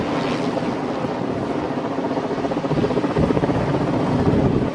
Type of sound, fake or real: real